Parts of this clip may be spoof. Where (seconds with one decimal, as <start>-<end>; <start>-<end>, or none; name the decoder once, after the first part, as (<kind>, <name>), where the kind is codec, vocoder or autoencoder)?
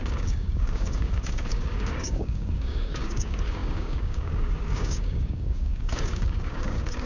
0.0-7.1 (codec, DAC)